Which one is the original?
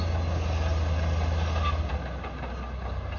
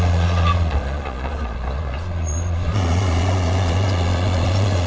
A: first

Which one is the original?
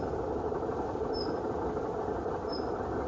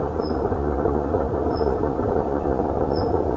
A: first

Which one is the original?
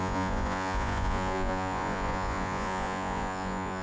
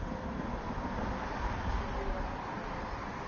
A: second